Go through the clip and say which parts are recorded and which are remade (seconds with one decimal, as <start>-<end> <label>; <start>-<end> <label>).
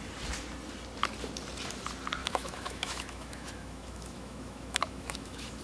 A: 0.0-2.2 recorded; 2.2-5.6 remade